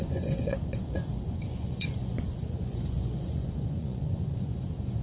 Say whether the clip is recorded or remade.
remade